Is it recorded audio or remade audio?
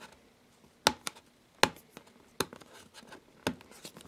recorded